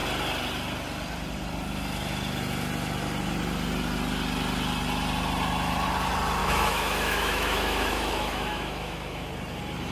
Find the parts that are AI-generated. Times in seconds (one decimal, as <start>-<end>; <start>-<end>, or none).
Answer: 6.4-9.3